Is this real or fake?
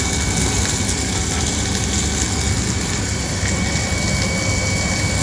real